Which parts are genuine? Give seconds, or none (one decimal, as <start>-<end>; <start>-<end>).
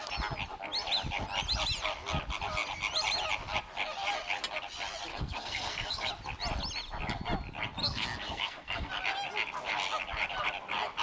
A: 0.0-5.1; 6.1-7.8; 8.9-11.0